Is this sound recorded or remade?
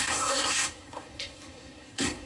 remade